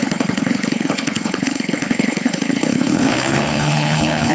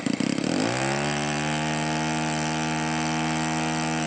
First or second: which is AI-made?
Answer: first